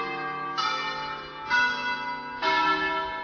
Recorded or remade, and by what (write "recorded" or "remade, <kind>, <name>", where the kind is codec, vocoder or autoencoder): recorded